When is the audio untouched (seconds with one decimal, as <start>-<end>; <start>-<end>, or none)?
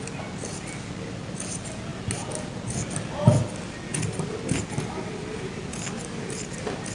0.0-6.9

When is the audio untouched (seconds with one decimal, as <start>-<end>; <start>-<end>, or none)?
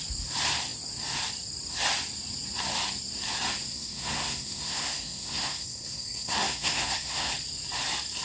0.0-3.7; 7.3-8.2